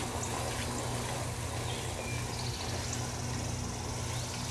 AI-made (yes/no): no